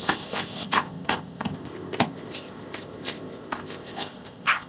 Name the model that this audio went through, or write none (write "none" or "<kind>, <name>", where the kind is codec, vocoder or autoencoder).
codec, ZipCodec